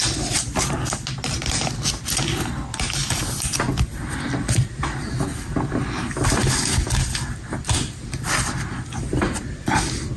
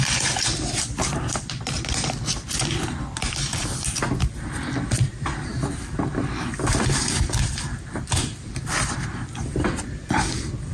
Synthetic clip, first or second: second